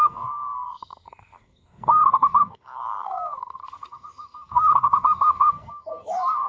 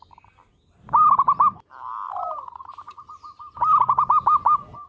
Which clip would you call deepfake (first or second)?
first